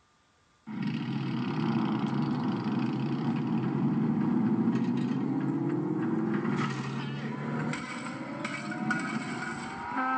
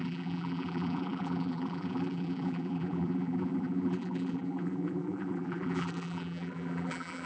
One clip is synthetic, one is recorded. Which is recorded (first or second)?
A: first